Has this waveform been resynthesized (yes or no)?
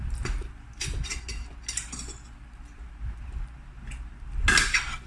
no